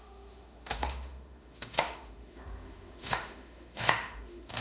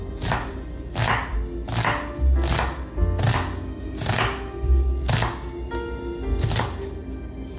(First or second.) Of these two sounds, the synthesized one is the first